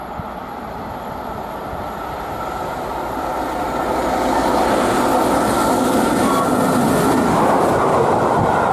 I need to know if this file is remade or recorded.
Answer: recorded